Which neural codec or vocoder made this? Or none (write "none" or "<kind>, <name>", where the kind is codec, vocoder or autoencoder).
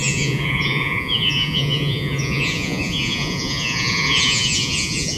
vocoder, Vocos